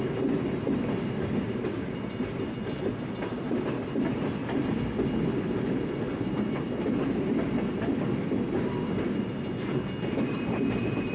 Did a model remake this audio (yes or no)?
no